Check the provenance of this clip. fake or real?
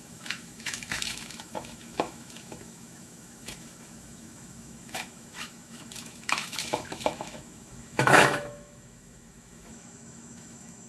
fake